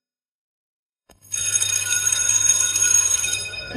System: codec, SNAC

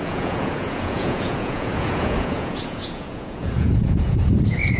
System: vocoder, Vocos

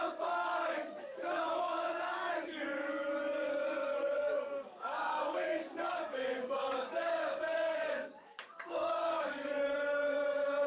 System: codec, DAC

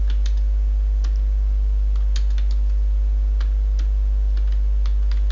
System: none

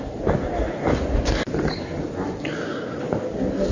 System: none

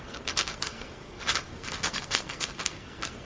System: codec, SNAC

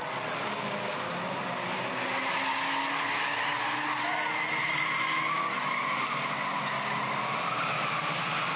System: none